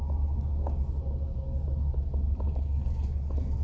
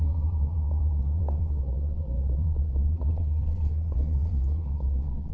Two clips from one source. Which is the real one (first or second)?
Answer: first